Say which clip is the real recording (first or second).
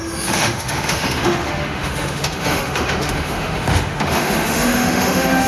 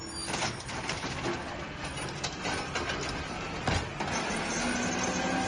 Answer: second